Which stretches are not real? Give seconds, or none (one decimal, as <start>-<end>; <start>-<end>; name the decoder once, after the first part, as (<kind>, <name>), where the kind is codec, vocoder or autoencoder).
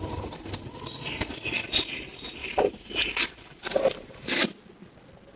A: 2.4-4.6 (vocoder, BigVGAN v2)